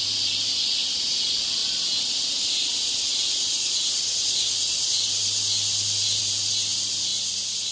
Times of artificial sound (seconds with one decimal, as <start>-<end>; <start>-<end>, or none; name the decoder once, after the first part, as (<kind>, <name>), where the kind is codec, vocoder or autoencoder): none

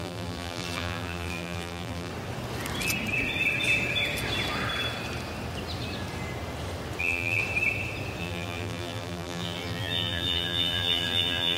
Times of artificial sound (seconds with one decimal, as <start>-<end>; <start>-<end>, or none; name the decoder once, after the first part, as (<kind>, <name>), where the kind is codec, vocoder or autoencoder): 0.0-2.1 (vocoder, BigVGAN v2); 7.0-7.4; 8.2-11.6

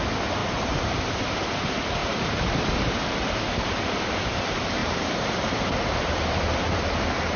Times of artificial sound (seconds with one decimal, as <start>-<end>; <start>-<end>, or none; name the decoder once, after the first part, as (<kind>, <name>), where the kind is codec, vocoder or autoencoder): 0.4-1.0 (vocoder, BigVGAN v2); 4.8-7.0

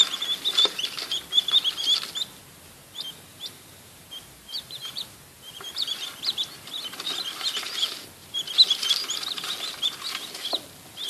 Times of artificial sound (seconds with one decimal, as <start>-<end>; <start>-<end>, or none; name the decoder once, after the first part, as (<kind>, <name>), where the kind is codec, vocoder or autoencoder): 3.3-5.7 (vocoder, BigVGAN v2)

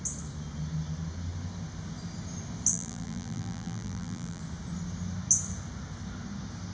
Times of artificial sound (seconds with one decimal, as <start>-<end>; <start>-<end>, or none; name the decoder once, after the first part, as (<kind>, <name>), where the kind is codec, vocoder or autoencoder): 2.7-4.4 (vocoder, BigVGAN v2)